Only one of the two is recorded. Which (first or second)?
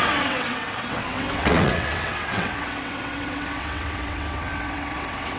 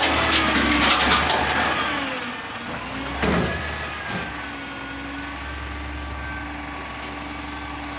second